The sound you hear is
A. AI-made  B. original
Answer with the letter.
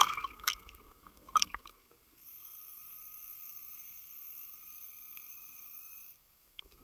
A